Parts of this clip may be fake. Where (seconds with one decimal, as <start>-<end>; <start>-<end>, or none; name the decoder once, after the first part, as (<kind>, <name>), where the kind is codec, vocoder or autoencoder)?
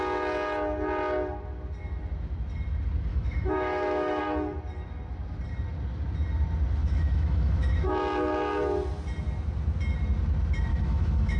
3.1-4.2 (autoencoder, DAC-VAE); 6.8-7.9; 10.7-11.4